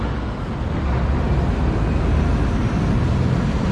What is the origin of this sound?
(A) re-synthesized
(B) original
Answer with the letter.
B